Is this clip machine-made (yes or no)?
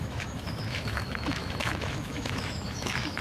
yes